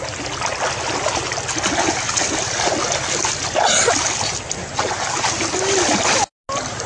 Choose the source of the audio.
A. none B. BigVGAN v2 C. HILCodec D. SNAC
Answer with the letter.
A